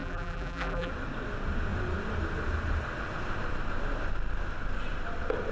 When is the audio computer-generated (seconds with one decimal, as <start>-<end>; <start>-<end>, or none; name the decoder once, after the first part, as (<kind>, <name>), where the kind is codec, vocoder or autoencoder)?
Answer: 0.0-0.9 (vocoder, BigVGAN v2)